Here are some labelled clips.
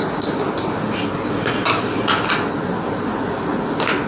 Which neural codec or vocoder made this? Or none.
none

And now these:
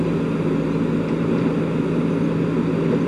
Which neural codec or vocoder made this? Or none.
none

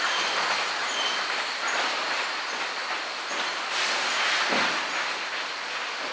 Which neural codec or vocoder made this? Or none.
none